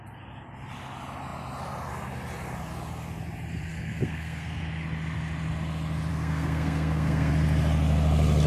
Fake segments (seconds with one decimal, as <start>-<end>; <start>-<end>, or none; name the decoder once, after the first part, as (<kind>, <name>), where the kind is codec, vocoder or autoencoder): 3.7-4.6 (codec, SNAC); 6.1-7.3